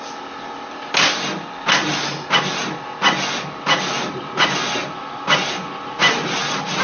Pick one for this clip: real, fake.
real